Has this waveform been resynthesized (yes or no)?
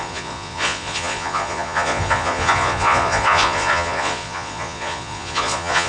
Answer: yes